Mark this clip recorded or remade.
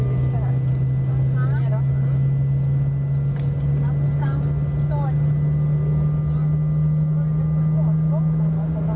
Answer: recorded